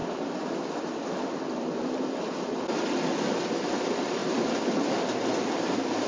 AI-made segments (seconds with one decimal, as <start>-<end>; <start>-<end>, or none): none